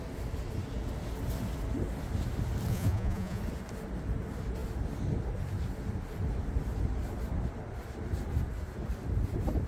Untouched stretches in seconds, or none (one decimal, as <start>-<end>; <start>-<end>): 0.0-2.7; 3.4-9.7